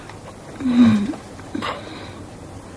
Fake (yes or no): no